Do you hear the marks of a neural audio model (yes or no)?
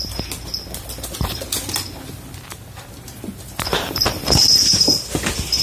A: no